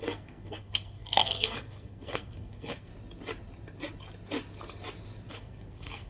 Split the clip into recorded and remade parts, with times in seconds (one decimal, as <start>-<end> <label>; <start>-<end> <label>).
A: 0.0-2.9 remade; 2.9-5.3 recorded; 5.3-6.1 remade